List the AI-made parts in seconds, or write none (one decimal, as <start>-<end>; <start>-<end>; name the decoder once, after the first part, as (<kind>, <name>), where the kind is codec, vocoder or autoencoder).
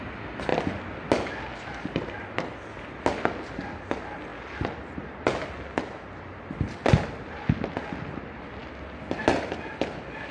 none